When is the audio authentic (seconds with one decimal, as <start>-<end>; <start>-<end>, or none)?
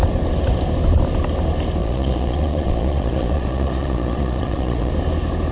0.0-1.8; 4.9-5.5